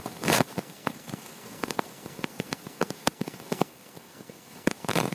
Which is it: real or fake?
fake